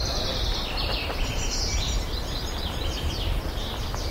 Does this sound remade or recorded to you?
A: recorded